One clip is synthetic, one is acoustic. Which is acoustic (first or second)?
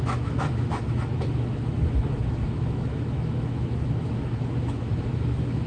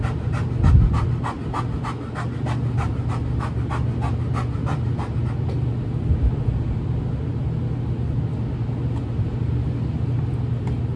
second